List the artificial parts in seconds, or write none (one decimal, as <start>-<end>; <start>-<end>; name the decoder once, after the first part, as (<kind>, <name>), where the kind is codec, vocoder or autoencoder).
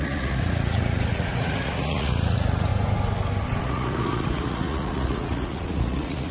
0.0-2.7 (vocoder, Vocos); 3.6-6.3